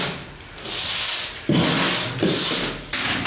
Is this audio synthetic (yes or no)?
no